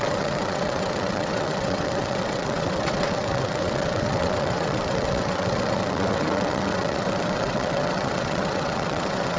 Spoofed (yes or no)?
yes